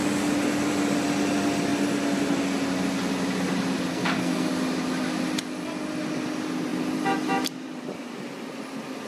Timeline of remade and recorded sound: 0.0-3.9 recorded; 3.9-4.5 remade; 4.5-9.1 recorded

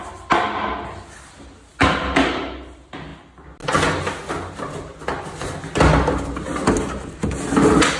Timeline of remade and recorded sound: 0.0-8.0 recorded

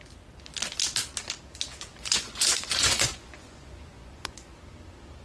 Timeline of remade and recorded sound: 0.0-1.9 recorded; 1.9-4.5 remade; 4.5-5.2 recorded

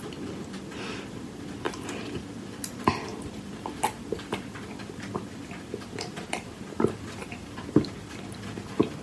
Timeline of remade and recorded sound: 0.0-3.1 recorded; 3.1-7.3 remade; 7.3-9.0 recorded